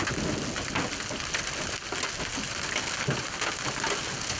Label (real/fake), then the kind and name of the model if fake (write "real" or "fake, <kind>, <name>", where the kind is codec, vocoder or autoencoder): real